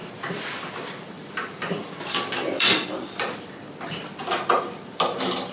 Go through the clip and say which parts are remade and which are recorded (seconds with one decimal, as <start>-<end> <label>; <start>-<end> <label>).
0.0-0.7 recorded; 0.7-5.5 remade